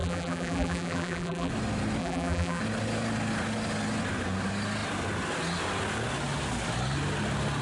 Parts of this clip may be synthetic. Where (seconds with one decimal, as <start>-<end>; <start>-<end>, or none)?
0.0-1.5; 2.0-2.6